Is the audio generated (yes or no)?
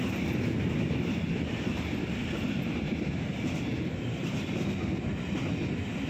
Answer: no